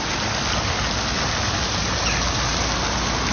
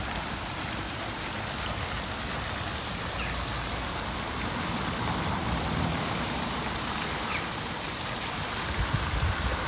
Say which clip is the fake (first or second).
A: second